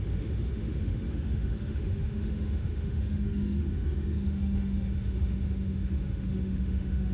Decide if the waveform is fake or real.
fake